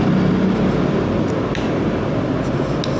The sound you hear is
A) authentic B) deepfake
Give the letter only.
A